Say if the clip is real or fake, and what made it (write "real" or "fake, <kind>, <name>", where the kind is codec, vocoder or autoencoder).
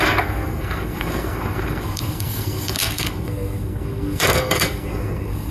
fake, codec, SNAC